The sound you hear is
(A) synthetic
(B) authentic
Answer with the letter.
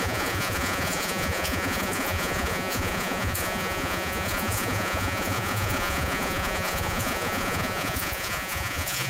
A